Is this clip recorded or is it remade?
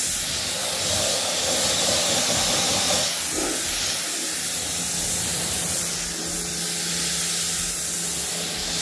recorded